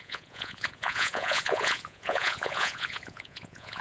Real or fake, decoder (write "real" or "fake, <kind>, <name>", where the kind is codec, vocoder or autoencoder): fake, vocoder, Vocos